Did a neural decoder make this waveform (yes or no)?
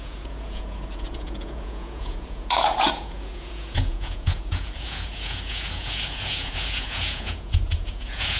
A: yes